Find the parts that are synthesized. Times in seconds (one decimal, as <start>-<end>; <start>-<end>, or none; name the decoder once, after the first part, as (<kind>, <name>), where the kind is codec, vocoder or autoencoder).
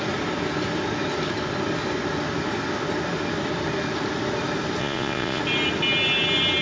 4.8-5.4 (vocoder, Vocos)